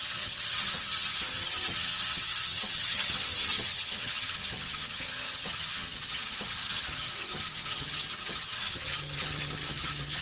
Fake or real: fake